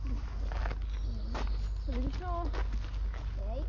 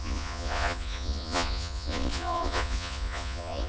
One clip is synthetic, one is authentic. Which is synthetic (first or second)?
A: second